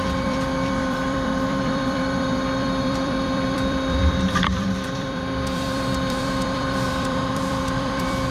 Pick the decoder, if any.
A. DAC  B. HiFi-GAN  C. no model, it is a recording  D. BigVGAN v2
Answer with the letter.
D